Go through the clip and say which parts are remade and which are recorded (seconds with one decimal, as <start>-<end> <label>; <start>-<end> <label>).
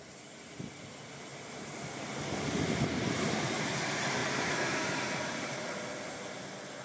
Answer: 0.0-4.2 recorded; 4.2-5.7 remade; 5.7-6.8 recorded